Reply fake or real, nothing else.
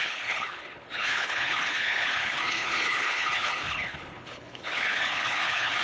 fake